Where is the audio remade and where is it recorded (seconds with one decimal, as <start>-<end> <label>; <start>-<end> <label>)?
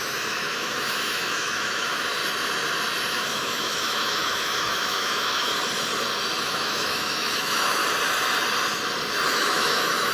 0.0-2.2 remade; 2.2-3.1 recorded; 3.1-5.5 remade; 5.5-6.4 recorded; 6.4-7.8 remade; 7.8-9.3 recorded; 9.3-10.1 remade